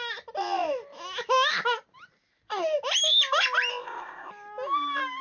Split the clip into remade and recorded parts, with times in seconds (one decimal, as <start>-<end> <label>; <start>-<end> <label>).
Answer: 0.0-3.7 recorded; 3.7-4.3 remade; 4.3-5.2 recorded